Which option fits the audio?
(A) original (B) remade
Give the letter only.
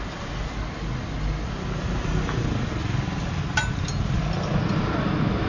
A